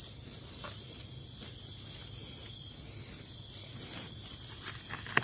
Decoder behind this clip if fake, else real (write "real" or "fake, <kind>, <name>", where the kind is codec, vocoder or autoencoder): real